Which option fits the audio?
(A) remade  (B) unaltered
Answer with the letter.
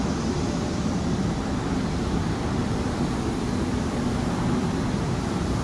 A